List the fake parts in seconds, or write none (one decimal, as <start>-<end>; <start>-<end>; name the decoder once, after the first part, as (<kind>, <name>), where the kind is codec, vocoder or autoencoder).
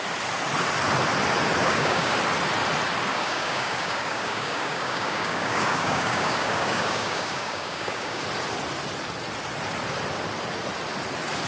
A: 1.6-2.2 (codec, DAC); 3.1-8.2